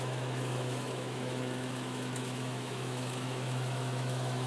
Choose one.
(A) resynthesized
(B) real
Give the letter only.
A